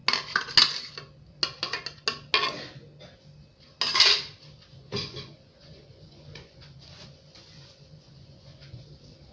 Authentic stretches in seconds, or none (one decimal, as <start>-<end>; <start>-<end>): 0.0-4.7; 8.9-9.3